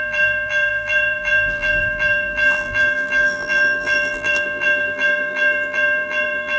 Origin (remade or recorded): remade